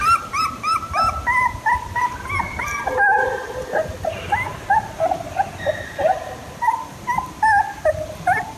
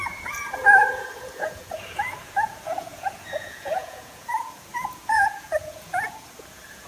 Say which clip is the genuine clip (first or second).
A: first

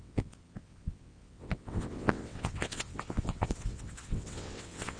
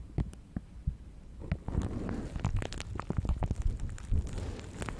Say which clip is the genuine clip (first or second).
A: second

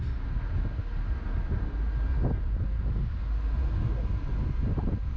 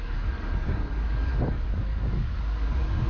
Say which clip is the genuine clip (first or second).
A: first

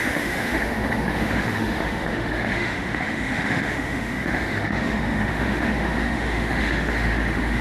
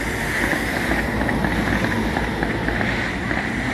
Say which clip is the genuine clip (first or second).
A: second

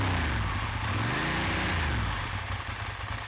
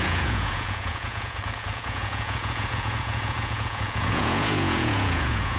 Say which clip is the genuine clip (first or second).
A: first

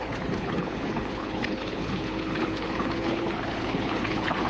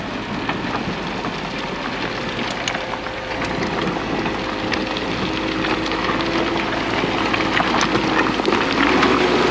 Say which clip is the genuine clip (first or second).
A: second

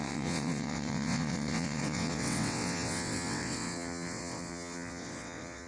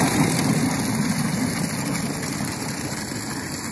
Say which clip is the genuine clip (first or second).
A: second